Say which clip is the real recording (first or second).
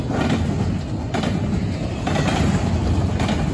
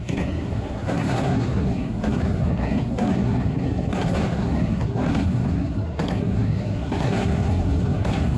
first